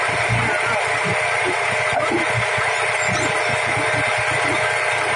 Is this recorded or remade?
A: recorded